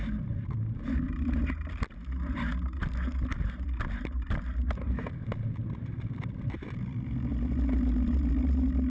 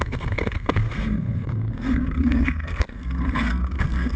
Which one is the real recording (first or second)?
first